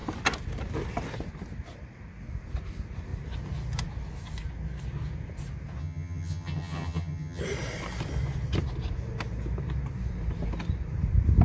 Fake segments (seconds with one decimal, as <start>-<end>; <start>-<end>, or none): 5.8-7.4